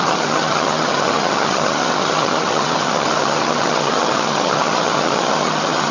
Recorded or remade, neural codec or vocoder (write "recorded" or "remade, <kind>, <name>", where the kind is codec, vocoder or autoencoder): remade, vocoder, HiFi-GAN